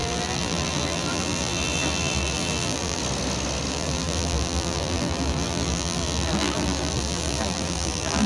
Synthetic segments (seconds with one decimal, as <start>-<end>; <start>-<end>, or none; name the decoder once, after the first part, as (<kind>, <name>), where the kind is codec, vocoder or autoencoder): 0.0-3.0 (vocoder, BigVGAN v2); 3.7-8.3